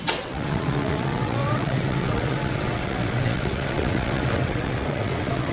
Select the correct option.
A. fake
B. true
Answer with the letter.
A